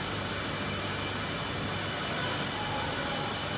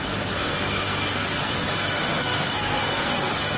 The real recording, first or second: first